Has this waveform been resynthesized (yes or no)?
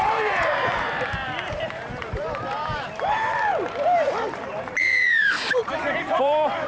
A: yes